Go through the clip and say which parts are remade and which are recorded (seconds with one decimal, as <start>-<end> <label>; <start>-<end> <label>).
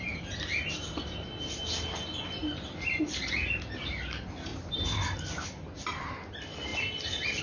0.0-7.4 recorded